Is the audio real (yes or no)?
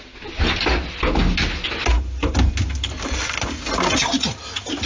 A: yes